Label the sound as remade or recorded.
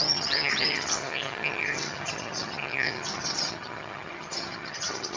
remade